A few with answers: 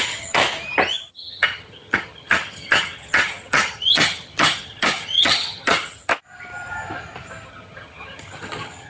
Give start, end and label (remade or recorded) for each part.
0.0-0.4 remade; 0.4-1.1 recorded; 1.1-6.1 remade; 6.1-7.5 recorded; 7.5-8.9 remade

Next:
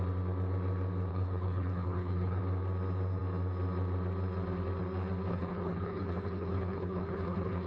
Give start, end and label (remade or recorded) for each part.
0.0-1.1 recorded; 1.1-2.4 remade; 2.4-5.3 recorded; 5.3-7.7 remade